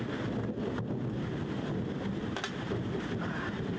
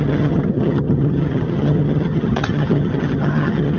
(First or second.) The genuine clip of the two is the first